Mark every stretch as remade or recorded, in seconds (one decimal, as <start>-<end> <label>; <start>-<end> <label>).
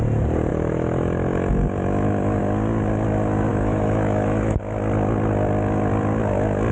0.0-0.5 recorded; 0.5-2.4 remade; 2.4-3.5 recorded; 3.5-4.6 remade; 4.6-6.7 recorded